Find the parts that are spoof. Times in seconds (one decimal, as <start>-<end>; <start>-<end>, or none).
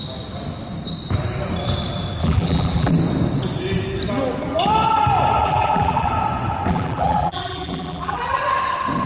2.2-2.9; 5.4-6.1; 6.7-8.4